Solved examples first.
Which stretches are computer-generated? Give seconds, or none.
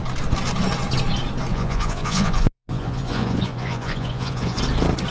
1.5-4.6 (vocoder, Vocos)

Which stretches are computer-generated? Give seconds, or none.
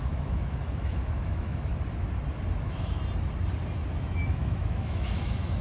0.0-1.7 (autoencoder, DAC-VAE); 2.6-3.0; 4.0-5.6